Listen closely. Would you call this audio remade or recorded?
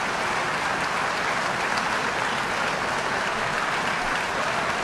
recorded